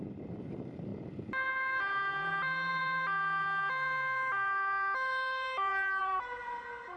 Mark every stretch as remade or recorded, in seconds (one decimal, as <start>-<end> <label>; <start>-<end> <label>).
0.0-0.9 remade; 0.9-1.8 recorded; 1.8-7.0 remade